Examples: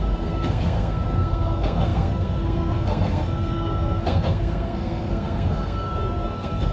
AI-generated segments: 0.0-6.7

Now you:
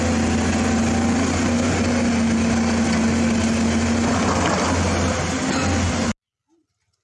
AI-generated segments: none

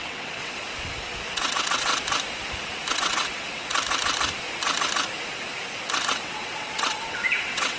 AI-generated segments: 0.0-0.6; 1.3-1.9; 2.9-3.7; 6.1-7.8